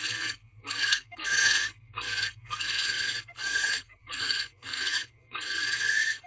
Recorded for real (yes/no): no